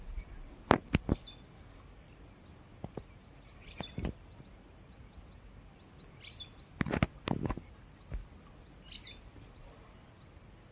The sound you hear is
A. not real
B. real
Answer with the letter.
B